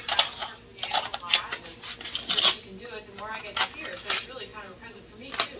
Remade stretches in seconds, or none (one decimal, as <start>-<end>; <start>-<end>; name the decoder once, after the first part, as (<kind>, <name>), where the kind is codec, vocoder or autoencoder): 4.5-5.1 (vocoder, BigVGAN v2)